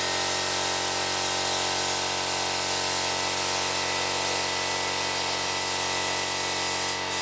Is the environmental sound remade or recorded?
recorded